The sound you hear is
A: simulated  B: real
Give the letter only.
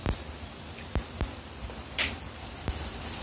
A